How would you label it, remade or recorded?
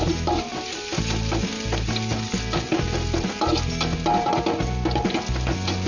recorded